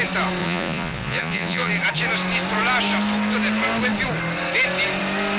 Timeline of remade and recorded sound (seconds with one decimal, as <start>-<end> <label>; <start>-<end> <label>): 0.0-0.4 recorded; 0.4-1.7 remade; 1.7-5.4 recorded